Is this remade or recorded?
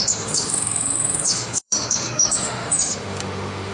remade